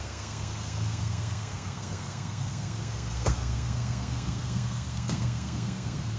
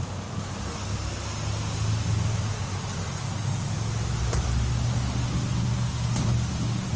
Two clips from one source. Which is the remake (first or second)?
first